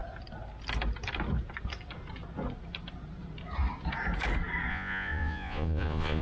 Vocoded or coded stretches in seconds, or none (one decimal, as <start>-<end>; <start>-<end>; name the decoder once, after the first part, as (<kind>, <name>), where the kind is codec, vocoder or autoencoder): 4.7-6.2 (vocoder, Vocos)